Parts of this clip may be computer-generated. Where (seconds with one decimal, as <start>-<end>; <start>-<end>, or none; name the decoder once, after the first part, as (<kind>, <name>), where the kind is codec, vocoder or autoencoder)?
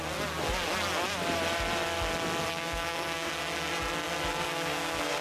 2.5-3.3 (codec, SNAC); 4.4-5.2